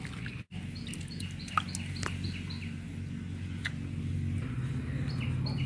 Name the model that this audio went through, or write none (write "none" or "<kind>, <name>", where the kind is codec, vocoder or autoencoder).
none